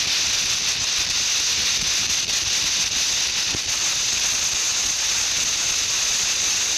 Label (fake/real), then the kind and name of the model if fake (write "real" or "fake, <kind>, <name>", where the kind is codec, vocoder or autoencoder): real